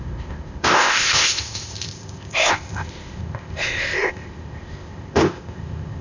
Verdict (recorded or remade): remade